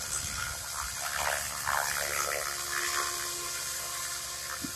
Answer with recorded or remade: recorded